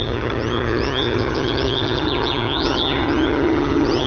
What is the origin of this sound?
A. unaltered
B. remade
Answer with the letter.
B